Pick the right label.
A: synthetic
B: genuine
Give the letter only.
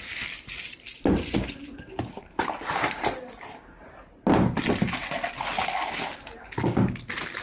B